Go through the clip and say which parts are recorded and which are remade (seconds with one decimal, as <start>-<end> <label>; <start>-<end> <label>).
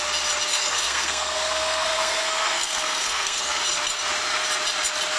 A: 0.0-0.5 recorded; 0.5-3.6 remade; 3.6-5.2 recorded